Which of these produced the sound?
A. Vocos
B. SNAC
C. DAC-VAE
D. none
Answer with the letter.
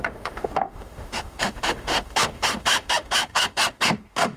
C